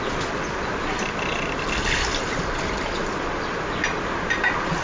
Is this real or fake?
real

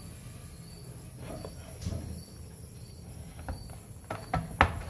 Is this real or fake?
real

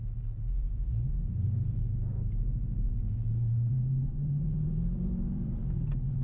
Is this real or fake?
fake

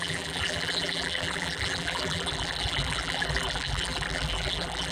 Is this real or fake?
fake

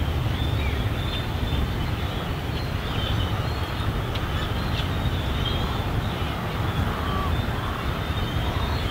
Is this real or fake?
real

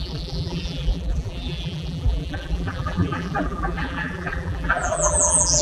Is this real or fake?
fake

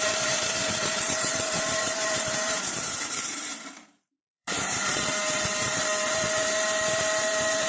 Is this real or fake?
fake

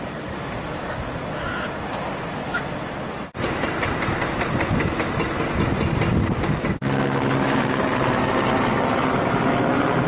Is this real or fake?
real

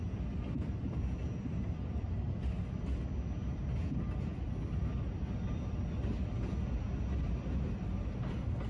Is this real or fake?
real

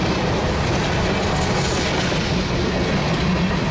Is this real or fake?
real